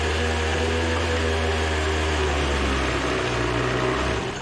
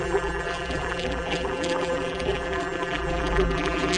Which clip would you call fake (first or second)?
second